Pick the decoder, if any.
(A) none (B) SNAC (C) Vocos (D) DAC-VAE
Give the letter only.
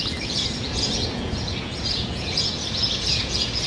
C